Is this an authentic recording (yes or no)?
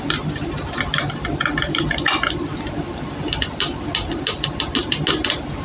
yes